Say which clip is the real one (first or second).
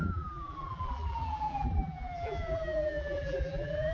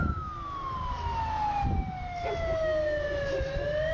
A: second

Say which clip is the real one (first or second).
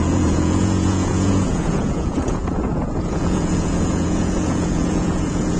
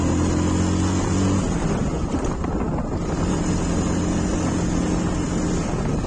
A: second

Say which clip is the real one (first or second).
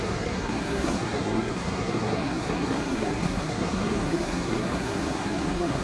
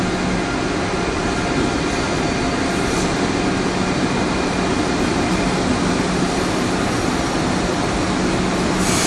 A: second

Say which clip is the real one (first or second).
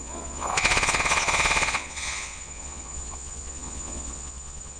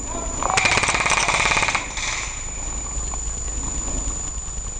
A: second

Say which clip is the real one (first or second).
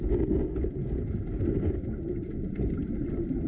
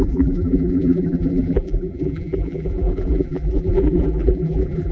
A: first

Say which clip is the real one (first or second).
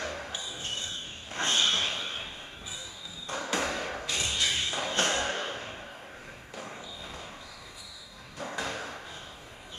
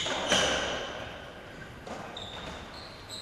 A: second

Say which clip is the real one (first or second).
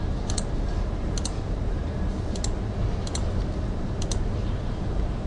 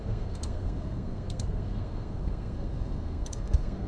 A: first